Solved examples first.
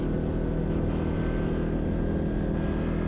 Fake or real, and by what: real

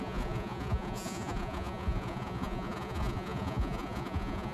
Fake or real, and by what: fake, vocoder, Vocos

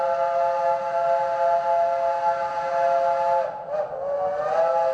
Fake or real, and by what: real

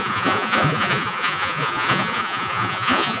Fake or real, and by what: fake, vocoder, Vocos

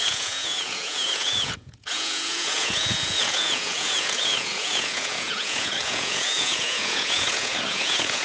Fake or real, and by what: fake, vocoder, Vocos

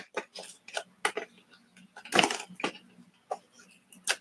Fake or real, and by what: real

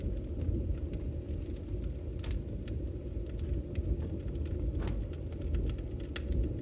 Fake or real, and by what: real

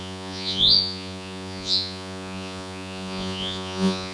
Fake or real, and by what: fake, vocoder, Vocos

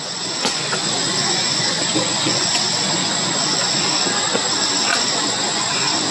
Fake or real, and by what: fake, vocoder, Vocos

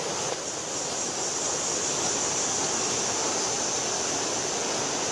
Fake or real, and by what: real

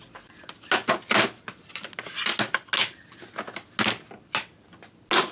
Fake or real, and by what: real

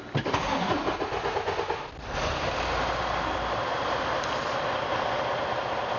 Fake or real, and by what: real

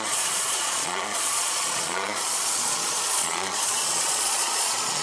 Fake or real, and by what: fake, vocoder, Vocos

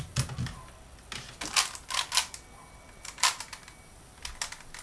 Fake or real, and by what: real